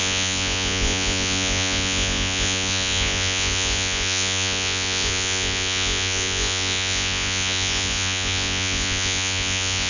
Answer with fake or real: fake